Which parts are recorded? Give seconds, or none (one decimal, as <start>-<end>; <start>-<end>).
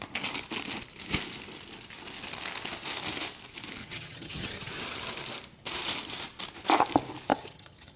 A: 0.0-3.8; 4.7-7.3